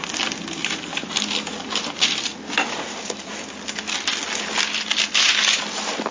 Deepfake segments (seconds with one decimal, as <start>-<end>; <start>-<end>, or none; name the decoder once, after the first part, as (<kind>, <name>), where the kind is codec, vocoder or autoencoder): 0.9-2.0 (vocoder, BigVGAN v2)